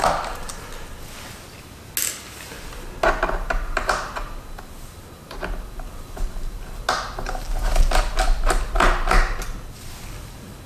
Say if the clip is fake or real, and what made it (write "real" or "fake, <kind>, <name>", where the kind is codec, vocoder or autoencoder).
real